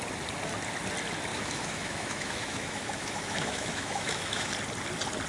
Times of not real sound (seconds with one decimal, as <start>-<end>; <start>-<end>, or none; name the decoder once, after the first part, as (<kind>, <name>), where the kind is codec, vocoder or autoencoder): 1.3-4.5 (autoencoder, DAC-VAE)